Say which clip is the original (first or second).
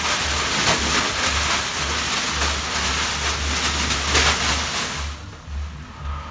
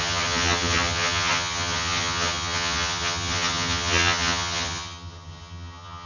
first